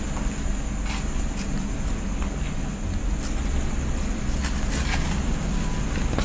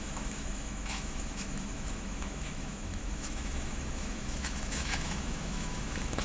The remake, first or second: second